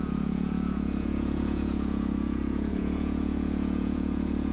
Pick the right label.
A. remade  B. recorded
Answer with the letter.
A